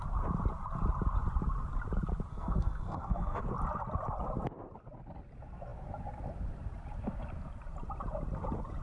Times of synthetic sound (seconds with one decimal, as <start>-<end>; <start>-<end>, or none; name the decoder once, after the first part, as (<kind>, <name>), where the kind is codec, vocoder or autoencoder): 2.3-3.4 (codec, SNAC)